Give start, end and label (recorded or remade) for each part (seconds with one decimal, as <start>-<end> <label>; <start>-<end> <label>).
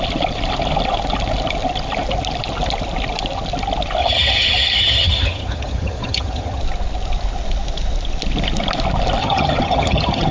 0.0-4.0 recorded; 4.0-6.6 remade; 6.6-9.2 recorded; 9.2-10.3 remade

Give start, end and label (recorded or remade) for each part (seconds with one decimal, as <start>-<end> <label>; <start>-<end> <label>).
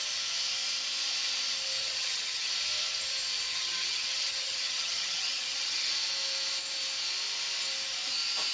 0.0-1.8 recorded; 1.8-2.5 remade; 2.5-3.5 recorded; 3.5-5.9 remade; 5.9-8.5 recorded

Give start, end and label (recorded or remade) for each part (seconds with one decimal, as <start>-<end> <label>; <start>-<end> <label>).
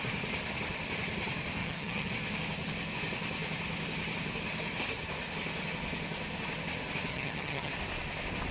0.0-1.6 recorded; 1.6-2.1 remade; 2.1-7.1 recorded; 7.1-7.7 remade; 7.7-8.5 recorded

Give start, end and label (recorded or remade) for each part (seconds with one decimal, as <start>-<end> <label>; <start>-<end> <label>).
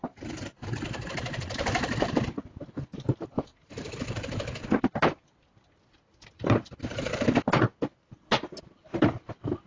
0.0-9.7 recorded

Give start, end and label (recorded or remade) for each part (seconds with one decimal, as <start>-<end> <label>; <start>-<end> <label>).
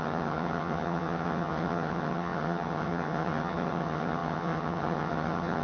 0.0-5.6 remade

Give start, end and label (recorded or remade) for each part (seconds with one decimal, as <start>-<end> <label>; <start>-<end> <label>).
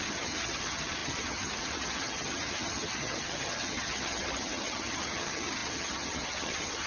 0.0-6.9 remade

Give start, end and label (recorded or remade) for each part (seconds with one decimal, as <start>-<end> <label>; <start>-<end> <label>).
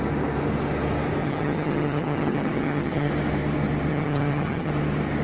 0.0-1.2 recorded; 1.2-3.1 remade; 3.1-3.9 recorded; 3.9-4.7 remade; 4.7-5.2 recorded